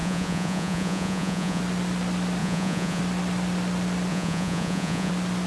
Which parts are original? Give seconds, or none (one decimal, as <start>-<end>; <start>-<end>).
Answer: 1.6-2.4; 3.0-4.1; 5.1-5.5